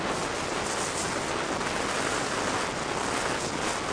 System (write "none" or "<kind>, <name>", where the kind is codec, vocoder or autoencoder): none